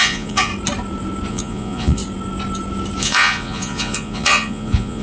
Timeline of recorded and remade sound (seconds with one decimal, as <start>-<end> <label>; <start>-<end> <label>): 0.0-0.5 remade; 0.5-1.3 recorded; 1.3-2.0 remade; 2.0-3.0 recorded; 3.0-5.0 remade